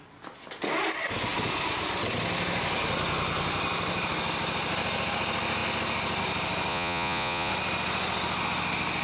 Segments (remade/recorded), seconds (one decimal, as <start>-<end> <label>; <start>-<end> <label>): 0.0-6.7 recorded; 6.7-7.5 remade; 7.5-9.0 recorded